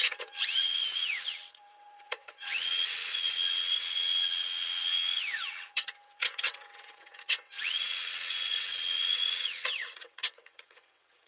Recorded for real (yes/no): no